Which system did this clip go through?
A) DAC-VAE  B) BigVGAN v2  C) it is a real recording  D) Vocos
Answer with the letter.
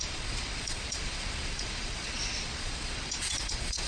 D